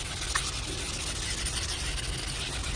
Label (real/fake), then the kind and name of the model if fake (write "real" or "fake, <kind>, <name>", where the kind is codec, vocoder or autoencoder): real